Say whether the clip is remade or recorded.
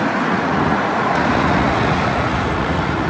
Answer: remade